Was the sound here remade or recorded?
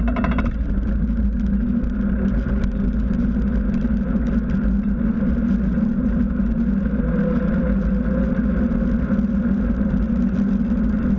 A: recorded